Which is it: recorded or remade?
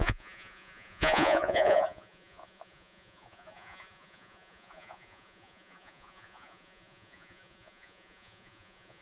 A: remade